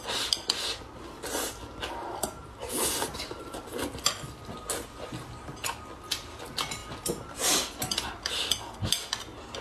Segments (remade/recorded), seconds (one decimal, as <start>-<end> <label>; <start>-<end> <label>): 0.0-9.6 recorded